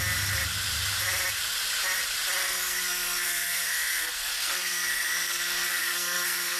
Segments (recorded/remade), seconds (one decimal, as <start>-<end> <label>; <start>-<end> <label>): 0.0-2.4 recorded; 2.4-6.6 remade